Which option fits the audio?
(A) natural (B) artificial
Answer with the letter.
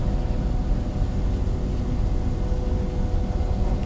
A